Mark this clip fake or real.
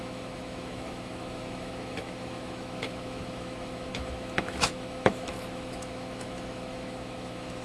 fake